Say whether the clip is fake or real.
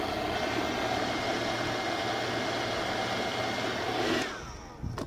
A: real